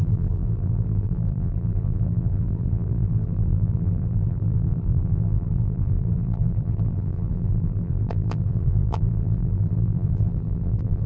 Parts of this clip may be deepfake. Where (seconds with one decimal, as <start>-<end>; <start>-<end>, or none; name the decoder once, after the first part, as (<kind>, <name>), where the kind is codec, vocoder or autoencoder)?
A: 0.0-11.1 (vocoder, BigVGAN v2)